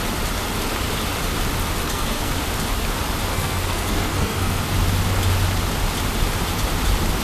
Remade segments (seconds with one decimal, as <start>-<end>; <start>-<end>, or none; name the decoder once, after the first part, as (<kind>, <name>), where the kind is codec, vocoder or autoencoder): 1.8-2.3 (codec, SNAC); 3.3-4.6